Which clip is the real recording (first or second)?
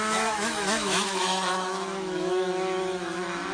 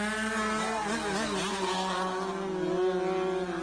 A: second